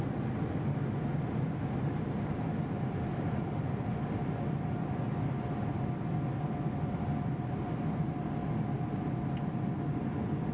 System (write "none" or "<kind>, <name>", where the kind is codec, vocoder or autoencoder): none